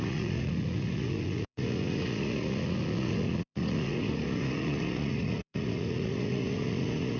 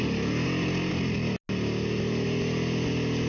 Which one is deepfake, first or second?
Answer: first